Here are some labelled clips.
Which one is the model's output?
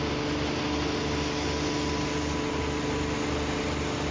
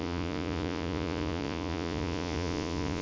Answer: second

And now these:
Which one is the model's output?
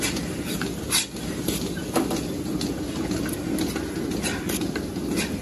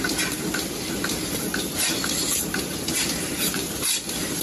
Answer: second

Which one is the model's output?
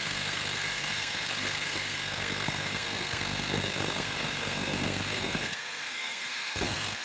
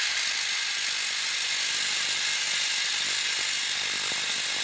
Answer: first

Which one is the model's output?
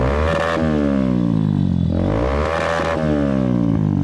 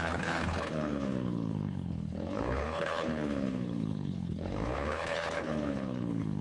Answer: second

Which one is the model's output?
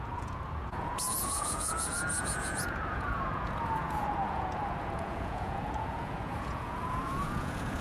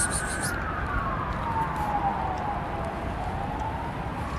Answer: first